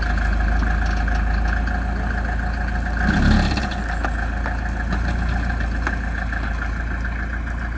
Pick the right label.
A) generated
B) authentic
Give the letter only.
B